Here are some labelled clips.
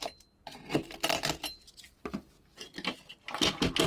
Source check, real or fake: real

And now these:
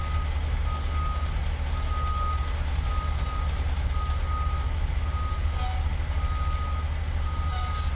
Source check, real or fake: real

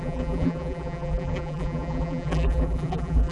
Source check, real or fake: fake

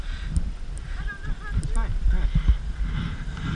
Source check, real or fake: real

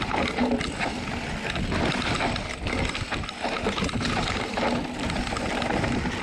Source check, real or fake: real